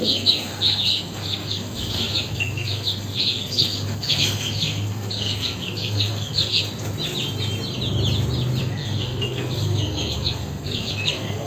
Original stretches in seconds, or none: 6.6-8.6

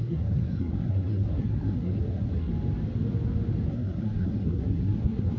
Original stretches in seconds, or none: 2.5-3.7